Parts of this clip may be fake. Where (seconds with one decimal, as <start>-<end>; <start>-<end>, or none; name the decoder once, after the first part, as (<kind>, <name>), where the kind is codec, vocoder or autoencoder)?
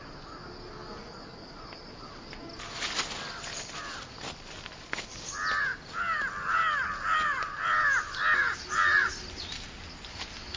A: none